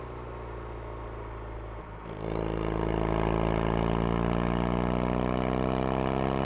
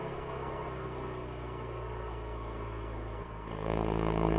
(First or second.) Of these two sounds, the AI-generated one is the second